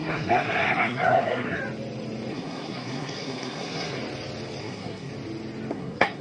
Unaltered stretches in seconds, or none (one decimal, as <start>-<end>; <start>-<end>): 1.6-2.3; 4.0-4.6; 5.1-5.7